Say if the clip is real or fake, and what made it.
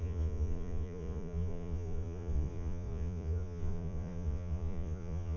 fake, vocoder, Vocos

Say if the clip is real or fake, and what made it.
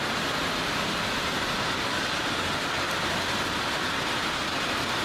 real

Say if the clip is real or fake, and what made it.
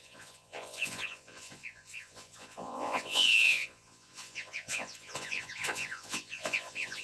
fake, vocoder, Vocos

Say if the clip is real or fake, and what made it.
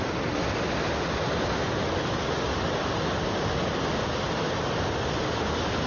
real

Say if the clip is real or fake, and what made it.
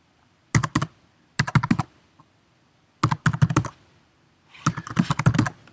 real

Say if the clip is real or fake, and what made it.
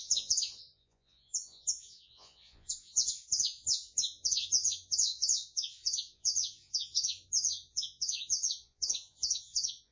fake, vocoder, Vocos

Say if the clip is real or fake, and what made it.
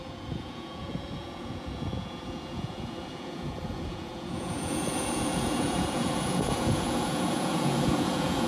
fake, vocoder, Vocos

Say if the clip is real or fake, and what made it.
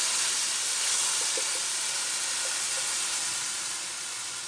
real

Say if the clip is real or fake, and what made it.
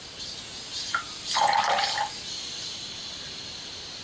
real